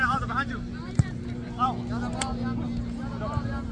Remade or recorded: recorded